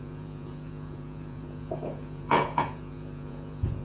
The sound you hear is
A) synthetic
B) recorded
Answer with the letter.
A